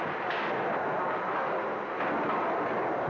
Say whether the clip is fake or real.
real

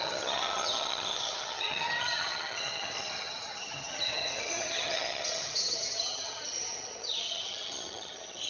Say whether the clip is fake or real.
fake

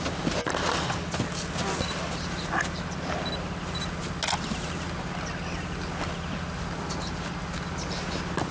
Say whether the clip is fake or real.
real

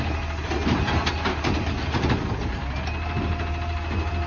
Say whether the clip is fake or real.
real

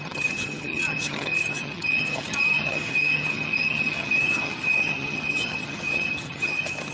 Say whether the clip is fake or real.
fake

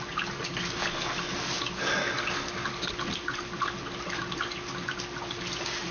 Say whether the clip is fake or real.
real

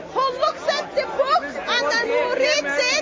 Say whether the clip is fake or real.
real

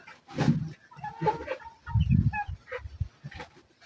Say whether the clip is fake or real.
real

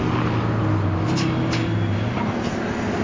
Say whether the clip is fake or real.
real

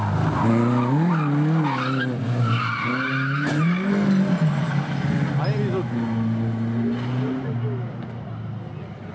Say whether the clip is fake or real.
real